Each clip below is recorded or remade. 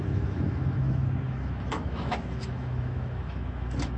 remade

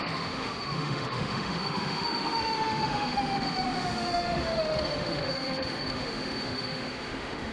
remade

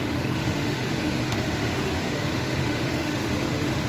remade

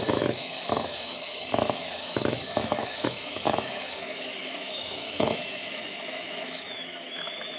remade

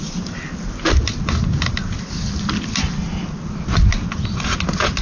recorded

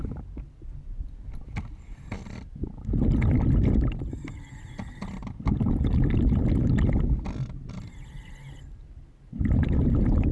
recorded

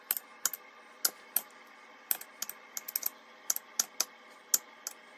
recorded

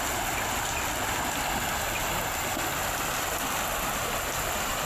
recorded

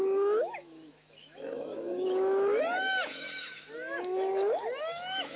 remade